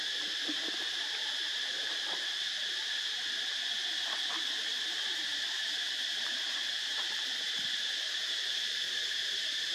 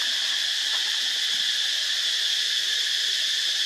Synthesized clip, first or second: first